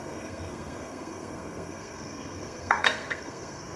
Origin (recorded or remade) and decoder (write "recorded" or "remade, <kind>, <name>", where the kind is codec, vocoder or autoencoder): remade, codec, SNAC